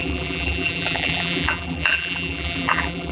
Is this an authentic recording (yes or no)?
no